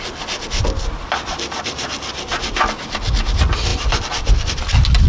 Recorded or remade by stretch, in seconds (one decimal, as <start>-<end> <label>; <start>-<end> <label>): 0.0-5.1 recorded